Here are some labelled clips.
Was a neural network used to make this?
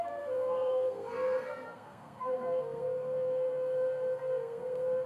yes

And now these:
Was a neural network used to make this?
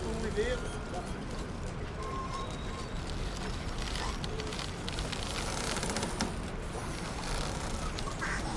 no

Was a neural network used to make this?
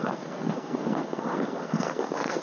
yes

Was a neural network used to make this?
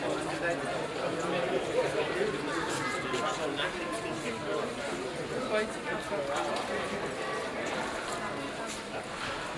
no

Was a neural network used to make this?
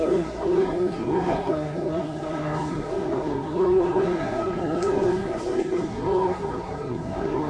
yes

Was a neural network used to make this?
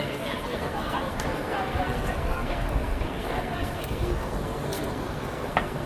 yes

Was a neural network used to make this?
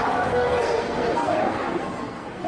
yes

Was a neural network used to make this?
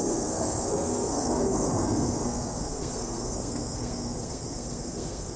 yes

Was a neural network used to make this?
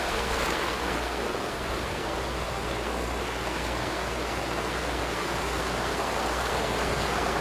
yes